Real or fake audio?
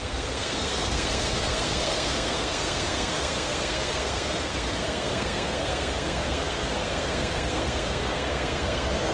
fake